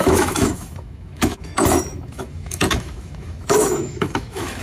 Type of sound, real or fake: fake